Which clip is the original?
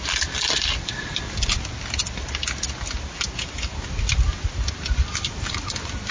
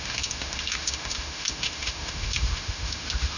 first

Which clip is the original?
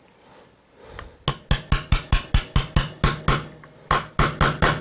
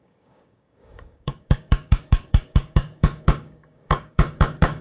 first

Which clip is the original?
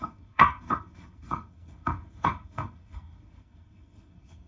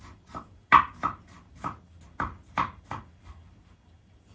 second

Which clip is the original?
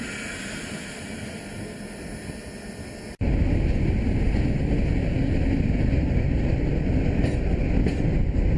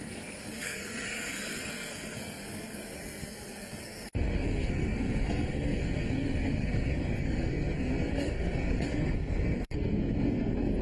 first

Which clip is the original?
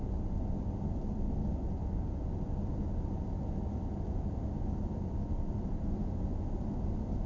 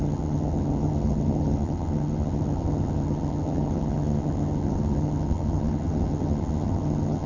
first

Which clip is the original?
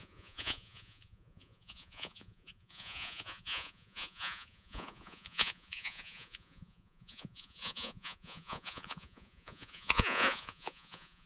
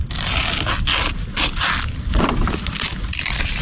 second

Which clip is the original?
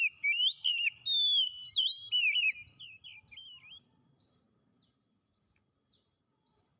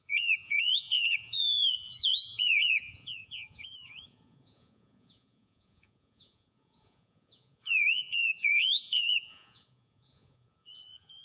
first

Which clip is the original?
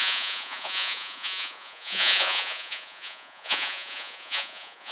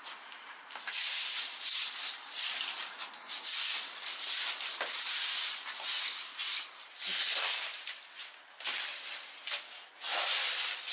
second